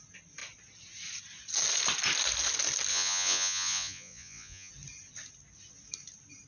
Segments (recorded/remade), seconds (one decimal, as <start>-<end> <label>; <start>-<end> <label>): 0.0-2.9 recorded; 2.9-4.7 remade; 4.7-6.5 recorded